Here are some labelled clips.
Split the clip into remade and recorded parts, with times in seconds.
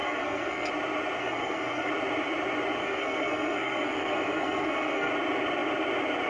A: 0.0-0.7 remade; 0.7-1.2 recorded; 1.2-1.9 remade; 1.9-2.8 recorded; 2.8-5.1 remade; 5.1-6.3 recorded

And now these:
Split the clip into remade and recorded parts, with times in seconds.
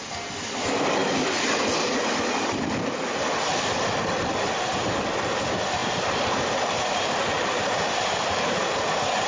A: 0.0-5.8 recorded; 5.8-8.7 remade; 8.7-9.3 recorded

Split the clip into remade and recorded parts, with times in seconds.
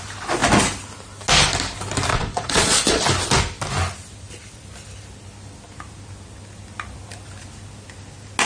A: 0.0-2.1 recorded; 2.1-3.0 remade; 3.0-8.5 recorded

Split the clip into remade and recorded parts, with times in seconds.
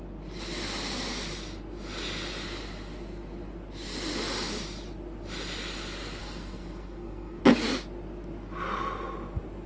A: 0.0-6.2 recorded; 6.2-7.4 remade; 7.4-9.7 recorded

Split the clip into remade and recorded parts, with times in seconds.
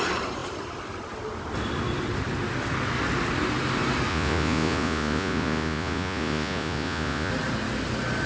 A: 0.0-4.1 recorded; 4.1-7.3 remade; 7.3-8.3 recorded